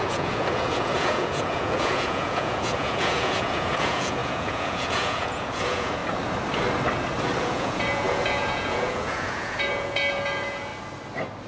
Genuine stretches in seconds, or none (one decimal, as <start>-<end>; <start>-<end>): 6.0-7.4; 10.7-11.5